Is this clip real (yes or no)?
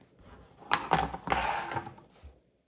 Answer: yes